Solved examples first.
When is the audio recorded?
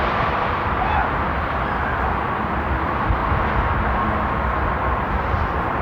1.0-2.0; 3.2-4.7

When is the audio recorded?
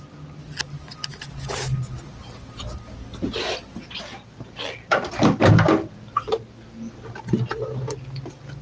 0.0-8.6